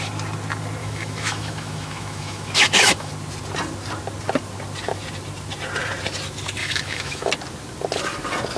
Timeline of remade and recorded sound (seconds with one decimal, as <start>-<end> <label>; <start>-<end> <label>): 0.0-0.8 recorded; 0.8-3.1 remade; 3.1-6.6 recorded; 6.6-7.3 remade; 7.3-8.6 recorded